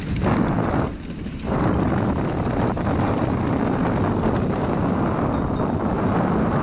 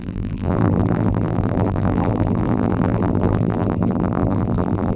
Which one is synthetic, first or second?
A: second